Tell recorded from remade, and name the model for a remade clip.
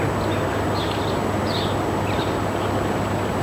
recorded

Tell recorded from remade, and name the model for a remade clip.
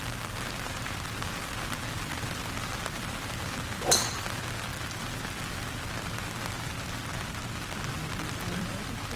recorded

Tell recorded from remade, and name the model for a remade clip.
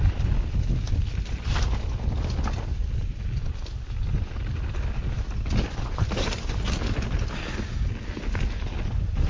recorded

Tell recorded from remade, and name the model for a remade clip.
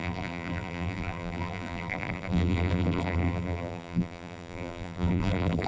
remade, vocoder, BigVGAN v2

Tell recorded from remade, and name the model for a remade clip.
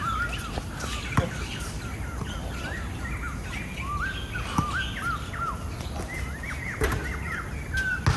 recorded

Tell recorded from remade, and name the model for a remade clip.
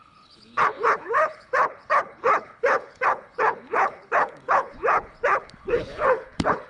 remade, codec, HILCodec